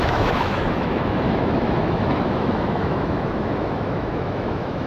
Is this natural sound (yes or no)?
no